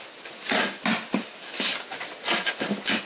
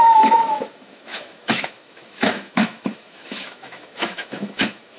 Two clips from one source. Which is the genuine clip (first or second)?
first